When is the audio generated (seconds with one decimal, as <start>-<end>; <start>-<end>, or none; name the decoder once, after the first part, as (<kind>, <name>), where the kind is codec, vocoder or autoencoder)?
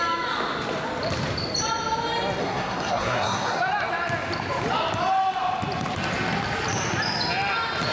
2.4-3.6 (codec, SNAC)